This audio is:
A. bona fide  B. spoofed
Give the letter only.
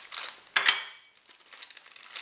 A